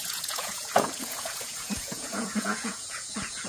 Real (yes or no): no